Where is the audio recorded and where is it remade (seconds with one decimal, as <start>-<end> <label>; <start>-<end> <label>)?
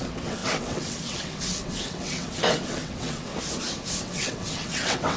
0.0-3.3 remade; 3.3-4.0 recorded; 4.0-5.2 remade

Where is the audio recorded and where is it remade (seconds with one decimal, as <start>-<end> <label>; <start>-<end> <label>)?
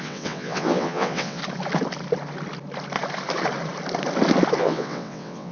0.0-1.4 remade; 1.4-4.6 recorded; 4.6-5.5 remade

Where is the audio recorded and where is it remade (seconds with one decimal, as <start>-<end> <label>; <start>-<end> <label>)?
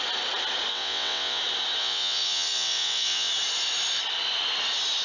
0.0-0.7 recorded; 0.7-1.4 remade; 1.4-1.8 recorded; 1.8-3.3 remade; 3.3-5.0 recorded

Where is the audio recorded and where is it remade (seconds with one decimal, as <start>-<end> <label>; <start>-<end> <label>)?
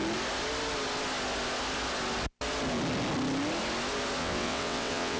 0.0-4.2 recorded; 4.2-5.2 remade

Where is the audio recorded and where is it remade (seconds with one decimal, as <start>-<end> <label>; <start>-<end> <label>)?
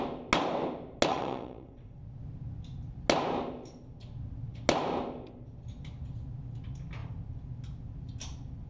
0.0-1.1 recorded; 1.1-2.0 remade; 2.0-8.7 recorded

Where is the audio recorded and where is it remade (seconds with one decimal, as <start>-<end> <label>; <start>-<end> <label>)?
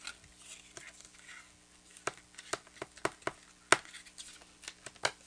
0.0-5.3 recorded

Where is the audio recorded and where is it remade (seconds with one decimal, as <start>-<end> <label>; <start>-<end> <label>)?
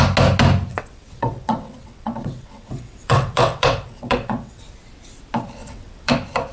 0.0-0.7 recorded; 0.7-4.6 remade; 4.6-5.6 recorded; 5.6-6.1 remade; 6.1-6.5 recorded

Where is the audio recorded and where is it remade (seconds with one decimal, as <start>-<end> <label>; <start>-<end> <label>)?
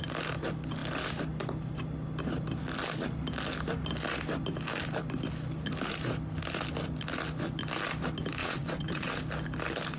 0.0-8.4 recorded; 8.4-9.1 remade; 9.1-10.0 recorded